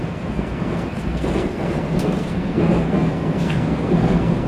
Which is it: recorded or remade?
remade